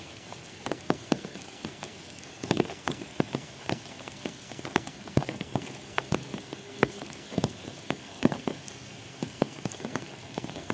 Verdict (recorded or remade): remade